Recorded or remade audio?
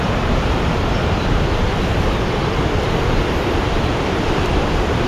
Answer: remade